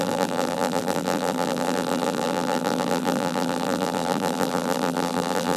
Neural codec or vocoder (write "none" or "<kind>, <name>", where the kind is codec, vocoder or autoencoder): vocoder, BigVGAN v2